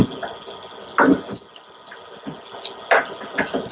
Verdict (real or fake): real